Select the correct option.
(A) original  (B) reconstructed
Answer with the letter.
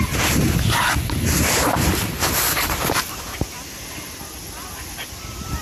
B